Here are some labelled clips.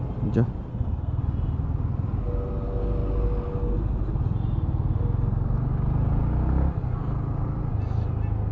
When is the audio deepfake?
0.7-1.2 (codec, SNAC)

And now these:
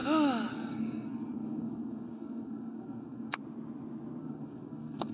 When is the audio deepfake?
0.5-3.4 (codec, SNAC); 4.2-5.1

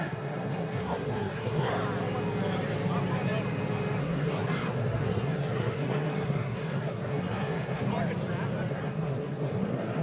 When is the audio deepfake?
0.0-1.7 (codec, SNAC); 4.0-7.9; 8.7-10.0

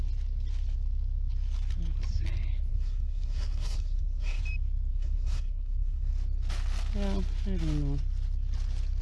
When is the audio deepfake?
2.7-4.4 (codec, SNAC); 4.9-6.1